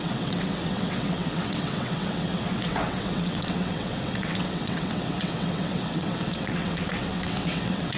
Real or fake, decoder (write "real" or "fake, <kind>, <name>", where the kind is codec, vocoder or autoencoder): fake, vocoder, WaveNeXt